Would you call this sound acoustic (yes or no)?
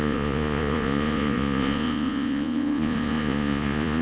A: no